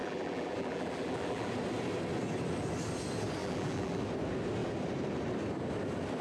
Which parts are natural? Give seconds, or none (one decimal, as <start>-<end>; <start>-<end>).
1.5-3.4; 4.0-6.2